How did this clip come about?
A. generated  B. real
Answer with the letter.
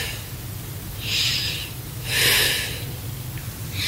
B